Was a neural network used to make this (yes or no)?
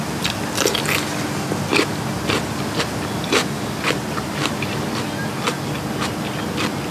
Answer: no